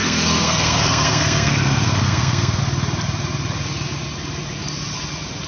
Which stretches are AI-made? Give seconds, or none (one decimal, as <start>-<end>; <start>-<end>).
0.0-2.6